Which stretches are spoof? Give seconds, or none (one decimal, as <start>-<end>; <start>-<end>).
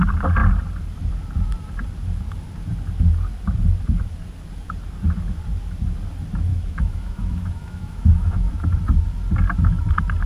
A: 6.5-8.5